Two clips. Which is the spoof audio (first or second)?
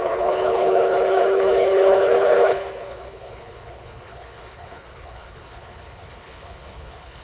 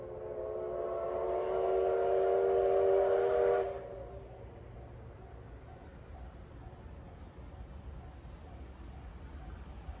first